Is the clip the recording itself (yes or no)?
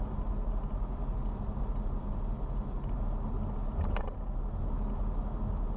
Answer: yes